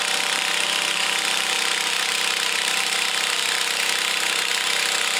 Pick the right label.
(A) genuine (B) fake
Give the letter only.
B